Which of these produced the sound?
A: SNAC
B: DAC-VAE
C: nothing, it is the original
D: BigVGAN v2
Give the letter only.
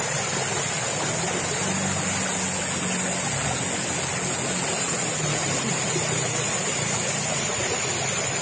C